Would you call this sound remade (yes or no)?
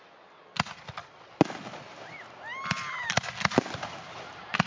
no